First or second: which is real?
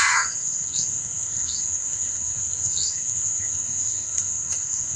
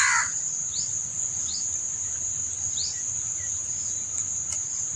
second